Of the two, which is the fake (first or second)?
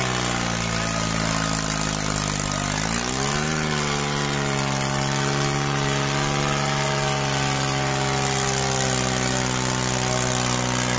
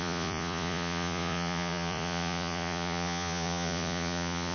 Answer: second